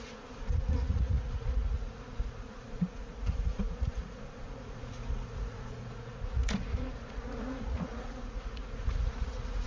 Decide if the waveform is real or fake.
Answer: fake